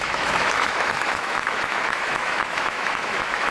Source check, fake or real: fake